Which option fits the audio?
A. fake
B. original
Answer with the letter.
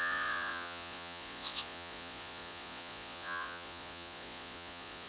A